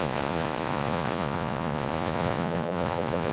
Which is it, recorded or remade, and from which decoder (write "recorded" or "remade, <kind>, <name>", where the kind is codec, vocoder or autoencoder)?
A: remade, vocoder, Vocos